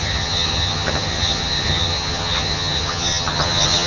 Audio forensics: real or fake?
fake